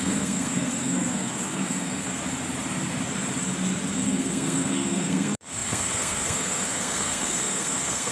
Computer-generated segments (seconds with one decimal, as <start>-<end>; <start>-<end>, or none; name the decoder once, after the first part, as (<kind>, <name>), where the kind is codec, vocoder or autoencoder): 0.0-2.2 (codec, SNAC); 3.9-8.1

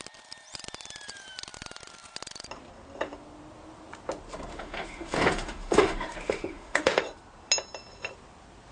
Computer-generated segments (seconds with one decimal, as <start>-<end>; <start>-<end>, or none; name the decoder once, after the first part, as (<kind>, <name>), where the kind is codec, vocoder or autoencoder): 4.5-7.0 (autoencoder, DAC-VAE)

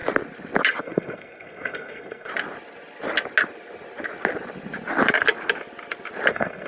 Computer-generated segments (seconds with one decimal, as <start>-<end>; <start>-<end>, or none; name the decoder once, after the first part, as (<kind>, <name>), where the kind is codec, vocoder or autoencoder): 0.8-2.3 (codec, SNAC); 6.3-6.7